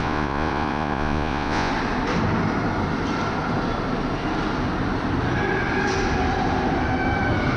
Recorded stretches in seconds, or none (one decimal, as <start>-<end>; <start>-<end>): 1.7-7.6